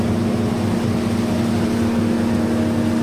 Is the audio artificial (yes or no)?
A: no